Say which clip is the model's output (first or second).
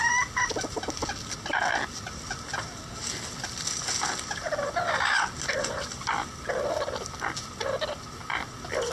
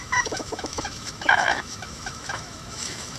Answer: second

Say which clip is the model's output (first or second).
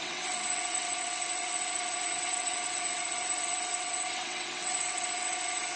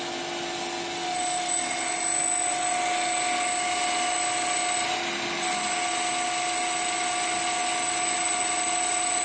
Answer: first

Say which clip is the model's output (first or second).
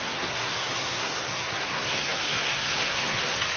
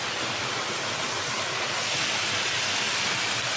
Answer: first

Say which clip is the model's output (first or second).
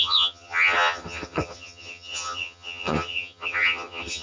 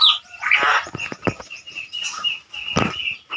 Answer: first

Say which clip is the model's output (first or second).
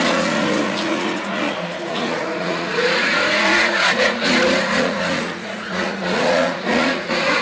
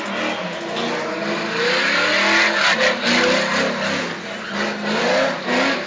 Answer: first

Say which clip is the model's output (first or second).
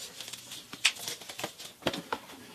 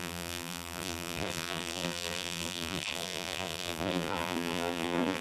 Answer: second